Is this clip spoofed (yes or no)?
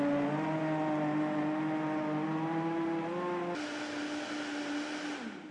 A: no